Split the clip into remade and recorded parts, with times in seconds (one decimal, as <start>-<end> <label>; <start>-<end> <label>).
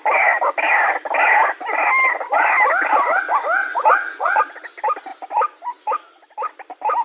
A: 0.0-3.6 recorded; 3.6-4.4 remade; 4.4-7.0 recorded